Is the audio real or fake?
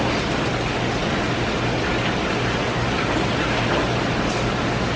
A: real